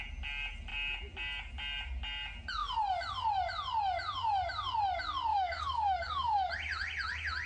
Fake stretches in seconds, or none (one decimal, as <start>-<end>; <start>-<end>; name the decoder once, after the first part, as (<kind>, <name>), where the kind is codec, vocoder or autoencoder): 5.3-6.5 (codec, DAC)